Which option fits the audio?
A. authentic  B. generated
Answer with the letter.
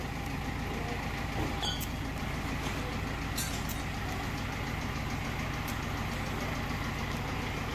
A